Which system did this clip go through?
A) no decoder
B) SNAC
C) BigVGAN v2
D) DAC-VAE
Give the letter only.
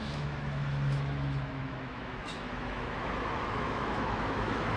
D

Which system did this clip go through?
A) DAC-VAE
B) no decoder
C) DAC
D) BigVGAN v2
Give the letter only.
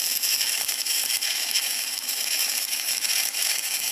A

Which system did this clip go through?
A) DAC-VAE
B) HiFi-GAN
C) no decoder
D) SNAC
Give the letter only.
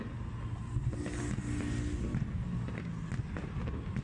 C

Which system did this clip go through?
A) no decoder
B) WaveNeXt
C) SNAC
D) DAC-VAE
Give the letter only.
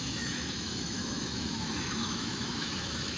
D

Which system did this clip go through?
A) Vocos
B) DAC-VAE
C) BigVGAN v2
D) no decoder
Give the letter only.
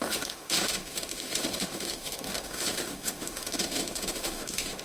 B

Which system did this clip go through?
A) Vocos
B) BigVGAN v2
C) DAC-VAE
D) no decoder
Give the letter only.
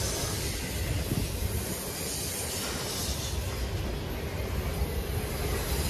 D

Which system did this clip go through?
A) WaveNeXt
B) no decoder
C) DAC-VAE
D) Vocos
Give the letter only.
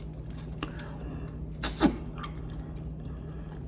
B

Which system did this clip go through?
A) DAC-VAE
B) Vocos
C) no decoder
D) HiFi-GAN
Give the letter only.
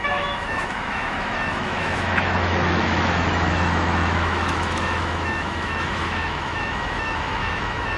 A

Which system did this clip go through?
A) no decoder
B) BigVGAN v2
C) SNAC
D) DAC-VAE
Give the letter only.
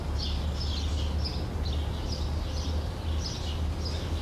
A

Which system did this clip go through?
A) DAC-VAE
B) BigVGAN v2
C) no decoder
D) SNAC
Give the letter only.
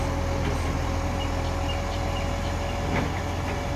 C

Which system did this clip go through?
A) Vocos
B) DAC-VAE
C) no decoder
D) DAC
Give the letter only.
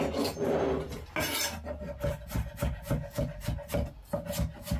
C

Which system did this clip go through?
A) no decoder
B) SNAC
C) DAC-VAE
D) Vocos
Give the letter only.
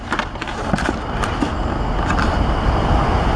A